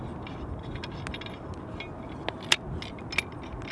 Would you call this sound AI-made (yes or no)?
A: no